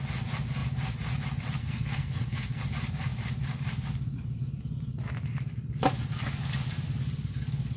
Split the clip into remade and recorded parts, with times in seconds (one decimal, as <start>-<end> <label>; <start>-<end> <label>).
0.0-1.6 recorded; 1.6-2.6 remade; 2.6-7.8 recorded